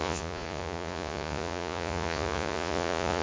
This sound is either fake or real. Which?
fake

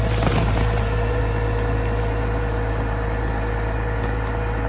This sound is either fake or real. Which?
real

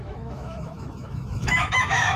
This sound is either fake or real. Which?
fake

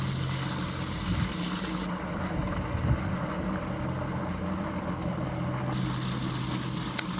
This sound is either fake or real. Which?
real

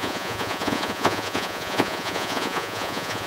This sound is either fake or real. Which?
fake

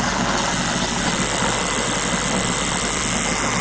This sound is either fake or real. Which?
real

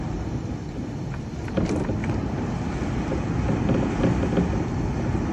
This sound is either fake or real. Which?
real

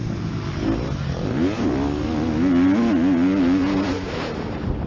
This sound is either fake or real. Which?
real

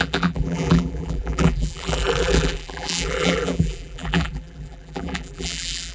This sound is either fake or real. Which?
fake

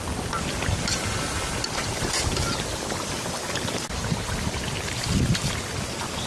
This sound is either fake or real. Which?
real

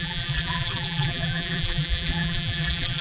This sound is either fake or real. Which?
fake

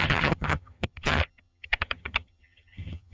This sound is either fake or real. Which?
fake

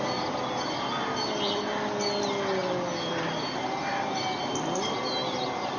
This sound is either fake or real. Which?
real